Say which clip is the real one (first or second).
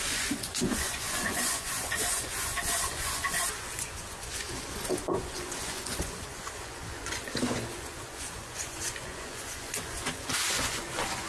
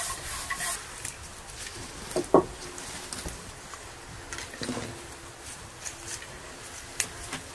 second